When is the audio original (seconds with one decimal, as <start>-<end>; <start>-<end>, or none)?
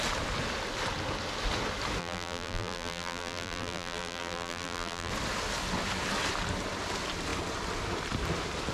0.0-2.0; 5.1-8.7